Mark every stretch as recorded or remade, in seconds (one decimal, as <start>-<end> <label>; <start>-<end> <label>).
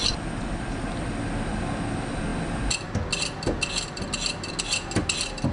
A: 0.0-5.5 recorded